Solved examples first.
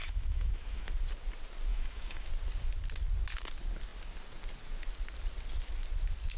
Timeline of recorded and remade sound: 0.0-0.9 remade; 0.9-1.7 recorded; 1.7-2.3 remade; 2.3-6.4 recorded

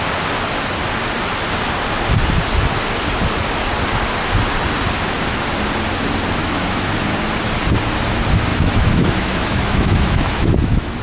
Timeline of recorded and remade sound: 0.0-6.4 recorded; 6.4-6.9 remade; 6.9-8.5 recorded; 8.5-11.0 remade

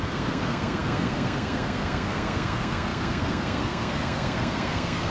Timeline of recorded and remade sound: 0.0-5.1 remade

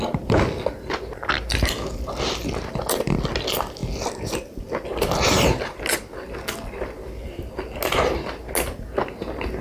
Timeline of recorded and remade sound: 0.0-9.6 recorded

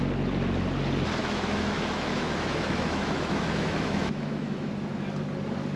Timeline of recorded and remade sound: 0.0-1.2 recorded; 1.2-4.7 remade; 4.7-5.8 recorded

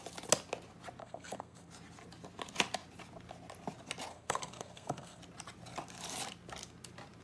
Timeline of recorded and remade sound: 0.0-1.0 recorded; 1.0-1.7 remade; 1.7-4.1 recorded; 4.1-5.2 remade; 5.2-7.2 recorded

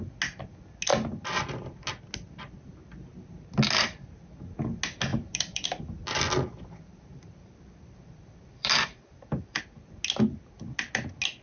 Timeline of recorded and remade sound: 0.0-5.1 recorded; 5.1-9.6 remade; 9.6-11.4 recorded